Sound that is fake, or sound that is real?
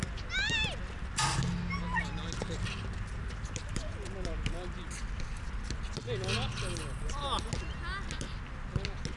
real